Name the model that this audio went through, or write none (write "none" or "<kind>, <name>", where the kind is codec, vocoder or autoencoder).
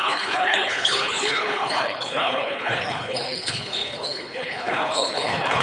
codec, HILCodec